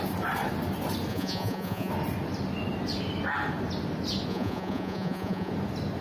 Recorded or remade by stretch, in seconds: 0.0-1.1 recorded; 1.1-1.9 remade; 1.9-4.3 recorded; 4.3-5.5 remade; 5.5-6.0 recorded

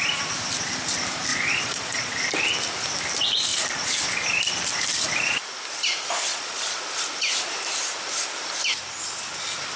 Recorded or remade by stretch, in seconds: 0.0-1.3 recorded; 1.3-2.1 remade; 2.1-6.3 recorded; 6.3-6.8 remade; 6.8-9.8 recorded

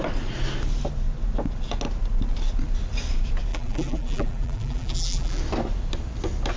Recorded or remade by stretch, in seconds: 0.0-3.5 recorded; 3.5-5.4 remade; 5.4-6.6 recorded

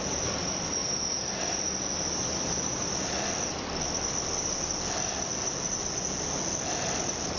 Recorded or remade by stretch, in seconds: 0.0-7.4 recorded